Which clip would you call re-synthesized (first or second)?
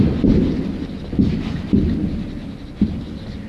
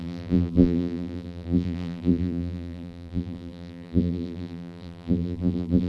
second